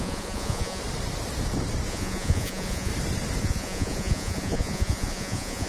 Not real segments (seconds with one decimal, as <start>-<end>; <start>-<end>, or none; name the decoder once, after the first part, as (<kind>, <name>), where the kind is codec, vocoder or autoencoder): 0.0-0.8 (vocoder, Vocos); 1.9-2.9; 3.4-5.7